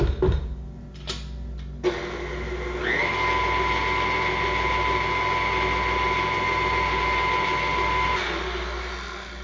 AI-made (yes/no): no